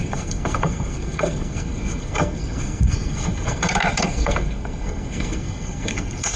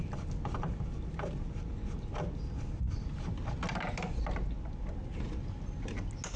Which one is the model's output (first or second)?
first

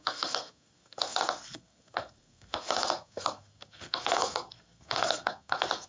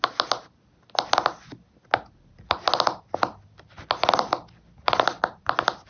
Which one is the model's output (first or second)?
first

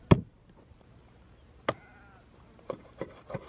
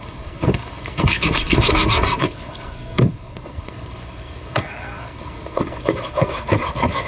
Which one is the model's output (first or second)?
second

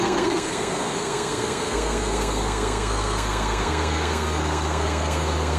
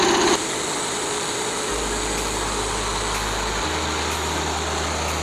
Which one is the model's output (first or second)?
first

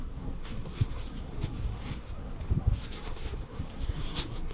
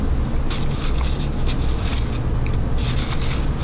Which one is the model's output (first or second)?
first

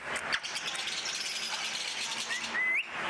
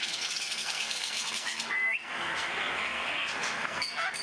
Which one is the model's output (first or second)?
second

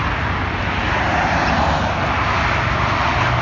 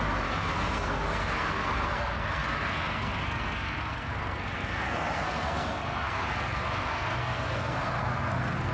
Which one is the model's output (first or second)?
second